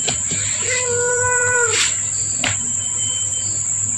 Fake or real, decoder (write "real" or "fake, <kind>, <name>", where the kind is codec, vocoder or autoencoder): fake, vocoder, BigVGAN v2